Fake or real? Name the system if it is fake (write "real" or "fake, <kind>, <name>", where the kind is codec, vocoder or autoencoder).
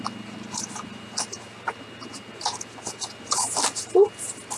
real